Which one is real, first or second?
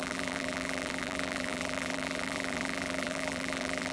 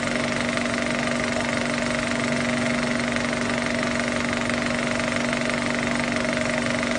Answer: second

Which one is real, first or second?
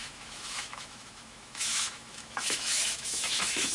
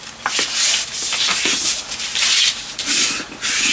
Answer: second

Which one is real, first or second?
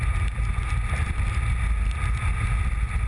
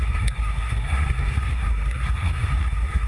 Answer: first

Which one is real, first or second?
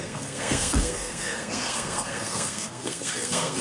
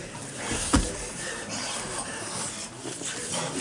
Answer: second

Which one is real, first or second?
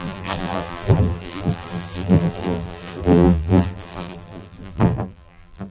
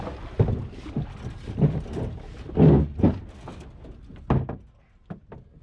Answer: second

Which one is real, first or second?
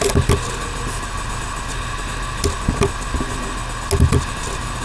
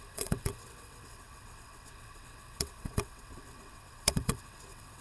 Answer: first